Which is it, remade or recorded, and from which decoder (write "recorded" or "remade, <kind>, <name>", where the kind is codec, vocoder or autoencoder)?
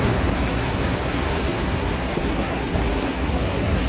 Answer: remade, codec, SNAC